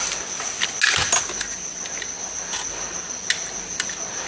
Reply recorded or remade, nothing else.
recorded